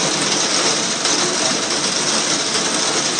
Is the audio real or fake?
real